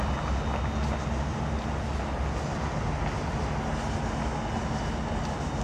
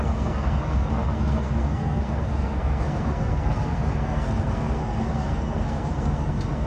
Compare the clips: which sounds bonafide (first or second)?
first